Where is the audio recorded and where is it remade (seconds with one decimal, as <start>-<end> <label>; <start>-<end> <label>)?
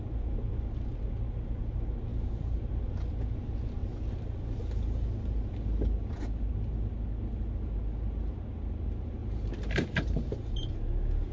0.0-2.1 recorded; 2.1-2.7 remade; 2.7-9.2 recorded; 9.2-10.3 remade; 10.3-11.3 recorded